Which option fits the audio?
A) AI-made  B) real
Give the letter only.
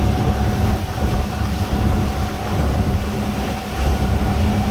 B